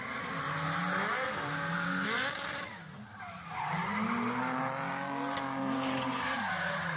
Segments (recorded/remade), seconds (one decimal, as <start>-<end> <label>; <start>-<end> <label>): 0.0-7.0 recorded